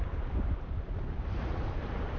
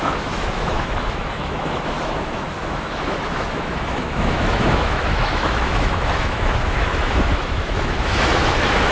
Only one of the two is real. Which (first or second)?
first